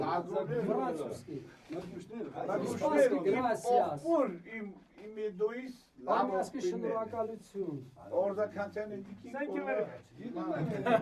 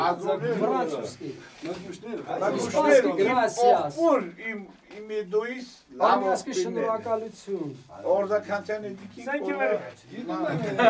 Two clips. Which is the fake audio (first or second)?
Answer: first